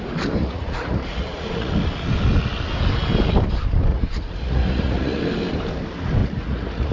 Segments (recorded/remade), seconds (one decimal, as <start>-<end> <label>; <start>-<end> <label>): 0.0-0.4 recorded; 0.4-1.7 remade; 1.7-3.9 recorded; 3.9-5.2 remade; 5.2-6.2 recorded; 6.2-6.9 remade